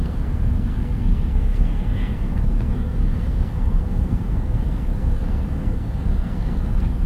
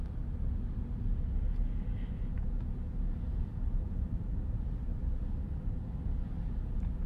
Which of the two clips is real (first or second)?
second